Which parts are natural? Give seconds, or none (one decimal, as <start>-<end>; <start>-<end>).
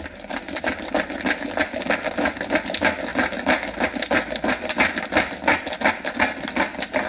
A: 0.0-7.1